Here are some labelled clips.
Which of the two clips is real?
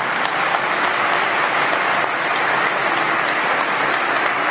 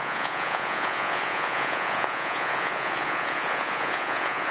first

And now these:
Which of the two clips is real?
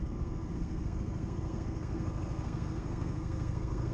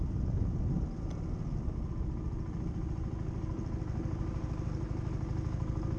second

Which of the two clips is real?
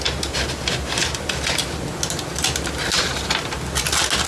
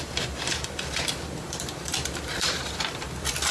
first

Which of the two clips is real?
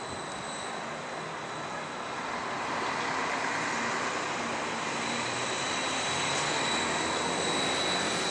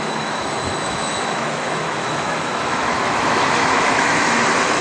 first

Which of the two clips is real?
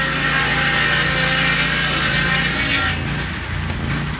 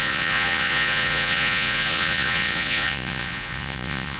first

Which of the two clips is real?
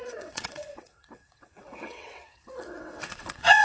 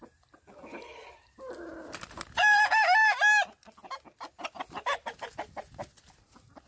second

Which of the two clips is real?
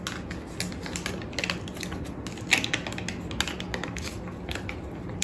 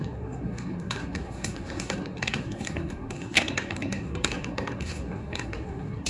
first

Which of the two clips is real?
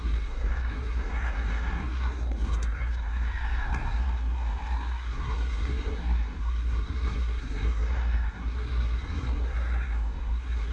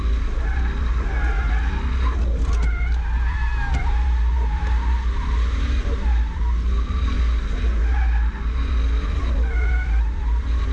second